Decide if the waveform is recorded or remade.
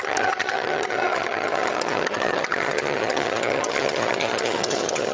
remade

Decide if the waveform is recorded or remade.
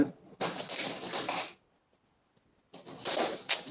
recorded